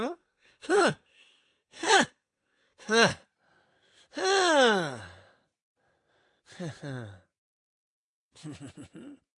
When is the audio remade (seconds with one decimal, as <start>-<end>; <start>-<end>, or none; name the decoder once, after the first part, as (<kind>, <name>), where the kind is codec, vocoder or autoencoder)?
0.0-3.1 (codec, SNAC); 7.8-8.4